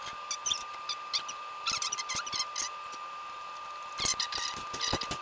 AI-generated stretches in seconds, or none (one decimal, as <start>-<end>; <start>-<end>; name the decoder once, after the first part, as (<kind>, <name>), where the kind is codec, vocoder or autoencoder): none